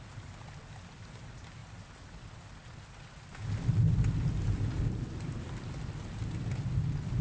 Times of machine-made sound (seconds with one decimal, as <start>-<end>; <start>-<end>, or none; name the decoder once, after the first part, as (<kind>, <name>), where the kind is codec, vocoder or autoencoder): none